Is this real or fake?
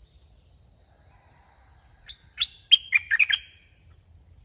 real